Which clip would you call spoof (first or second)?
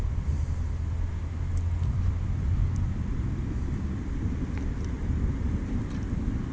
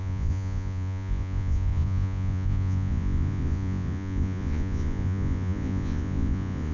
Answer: second